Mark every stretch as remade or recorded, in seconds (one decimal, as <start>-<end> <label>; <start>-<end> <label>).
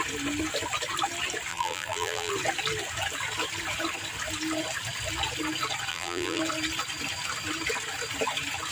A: 0.0-1.5 recorded; 1.5-2.3 remade; 2.3-5.9 recorded; 5.9-6.4 remade; 6.4-8.7 recorded